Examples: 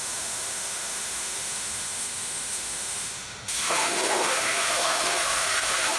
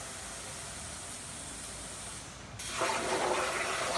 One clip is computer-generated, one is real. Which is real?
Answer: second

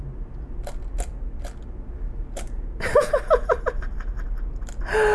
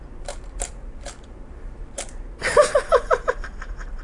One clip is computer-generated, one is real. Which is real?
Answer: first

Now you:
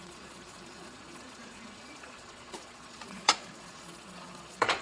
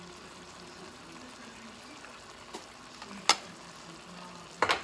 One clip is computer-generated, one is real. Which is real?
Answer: second